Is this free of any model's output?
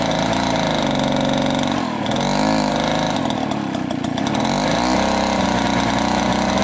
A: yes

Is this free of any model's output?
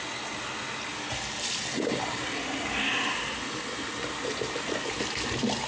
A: yes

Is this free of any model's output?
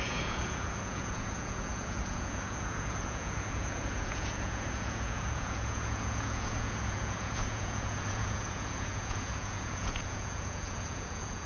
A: no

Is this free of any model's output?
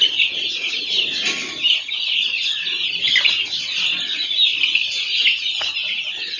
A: yes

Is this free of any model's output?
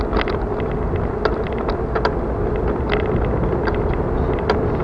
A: yes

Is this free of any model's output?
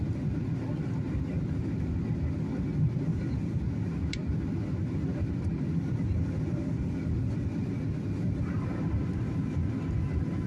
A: yes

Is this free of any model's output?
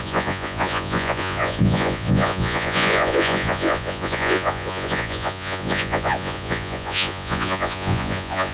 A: no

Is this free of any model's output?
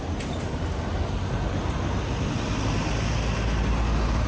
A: yes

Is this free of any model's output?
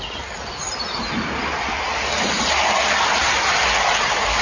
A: yes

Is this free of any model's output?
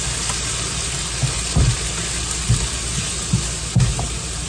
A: yes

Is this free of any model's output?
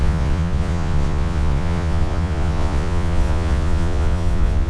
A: no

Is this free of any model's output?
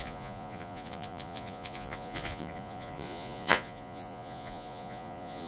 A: no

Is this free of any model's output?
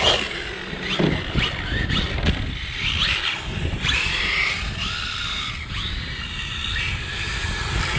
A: yes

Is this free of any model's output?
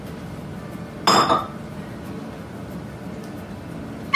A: yes